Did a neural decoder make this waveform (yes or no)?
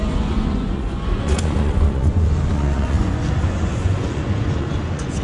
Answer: yes